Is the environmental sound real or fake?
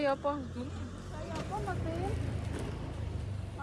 real